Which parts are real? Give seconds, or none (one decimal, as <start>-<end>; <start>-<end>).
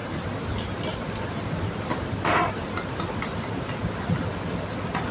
0.0-5.1